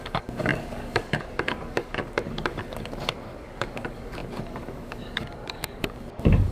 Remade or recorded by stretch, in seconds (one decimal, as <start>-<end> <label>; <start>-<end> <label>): 0.0-6.5 remade